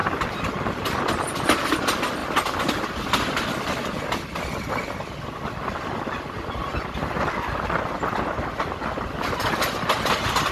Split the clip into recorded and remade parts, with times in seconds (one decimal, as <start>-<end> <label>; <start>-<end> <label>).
0.0-10.5 recorded

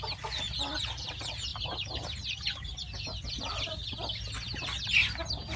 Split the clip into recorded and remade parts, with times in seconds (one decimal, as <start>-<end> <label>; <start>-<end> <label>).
0.0-5.6 recorded

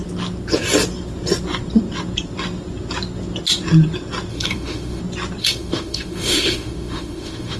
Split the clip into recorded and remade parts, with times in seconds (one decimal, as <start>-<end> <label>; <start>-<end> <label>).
0.0-4.3 recorded; 4.3-5.0 remade; 5.0-5.4 recorded; 5.4-7.6 remade

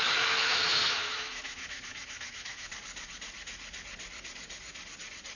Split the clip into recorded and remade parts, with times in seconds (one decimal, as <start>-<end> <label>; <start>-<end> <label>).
0.0-2.7 remade; 2.7-5.4 recorded

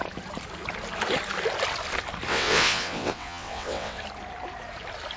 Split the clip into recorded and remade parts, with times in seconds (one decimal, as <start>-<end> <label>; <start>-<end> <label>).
0.0-2.3 recorded; 2.3-4.0 remade; 4.0-5.2 recorded